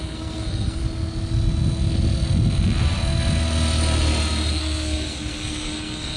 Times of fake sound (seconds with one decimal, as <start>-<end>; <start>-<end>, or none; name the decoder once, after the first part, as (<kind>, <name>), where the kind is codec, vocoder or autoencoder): 0.0-0.8 (codec, SNAC); 4.5-6.2